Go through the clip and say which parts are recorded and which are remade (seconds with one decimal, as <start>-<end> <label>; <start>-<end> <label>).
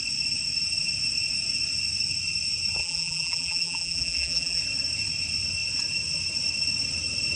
0.0-2.8 recorded; 2.8-4.6 remade; 4.6-7.4 recorded